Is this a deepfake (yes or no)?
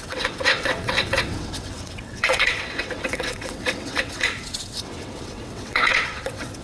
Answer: yes